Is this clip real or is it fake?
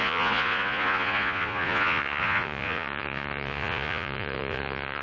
fake